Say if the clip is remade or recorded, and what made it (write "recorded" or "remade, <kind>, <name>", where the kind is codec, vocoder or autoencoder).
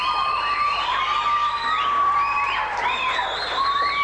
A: remade, vocoder, BigVGAN v2